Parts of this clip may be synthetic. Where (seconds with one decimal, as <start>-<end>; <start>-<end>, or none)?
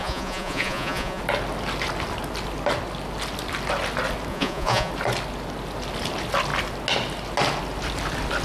0.0-1.2; 4.3-4.9